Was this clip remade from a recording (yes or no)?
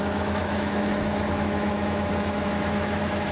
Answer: yes